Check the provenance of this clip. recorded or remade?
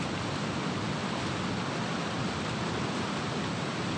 recorded